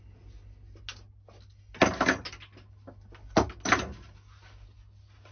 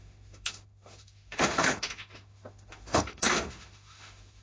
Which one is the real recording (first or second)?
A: first